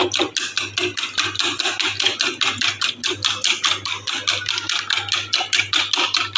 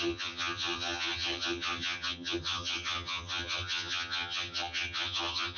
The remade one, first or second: second